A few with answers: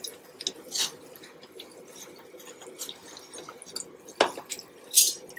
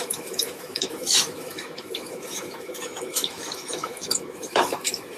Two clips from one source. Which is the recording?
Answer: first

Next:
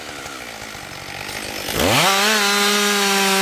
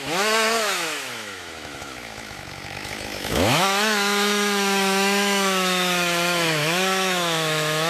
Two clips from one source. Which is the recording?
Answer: first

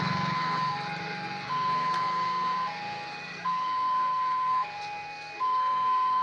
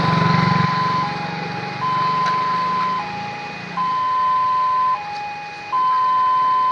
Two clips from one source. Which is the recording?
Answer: second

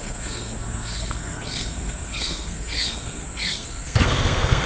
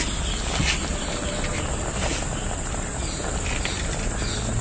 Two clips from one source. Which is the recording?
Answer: second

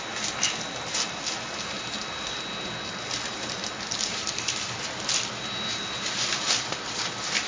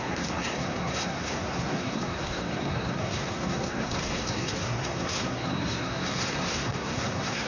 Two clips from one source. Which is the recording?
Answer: first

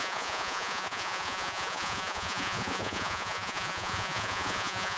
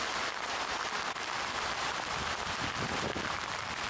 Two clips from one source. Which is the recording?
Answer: second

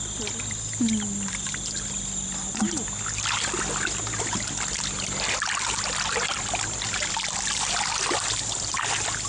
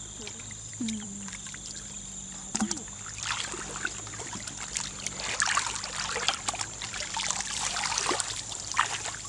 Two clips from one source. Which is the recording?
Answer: first